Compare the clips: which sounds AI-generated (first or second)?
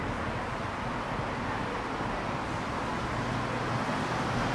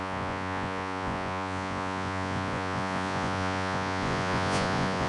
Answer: second